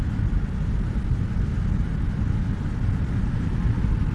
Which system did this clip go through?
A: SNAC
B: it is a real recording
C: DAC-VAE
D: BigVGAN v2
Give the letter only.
B